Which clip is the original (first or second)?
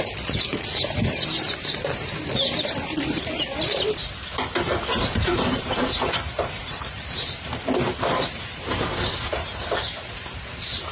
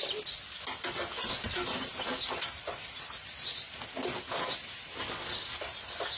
second